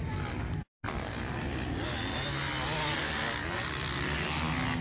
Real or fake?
real